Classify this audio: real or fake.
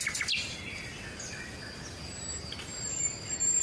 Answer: real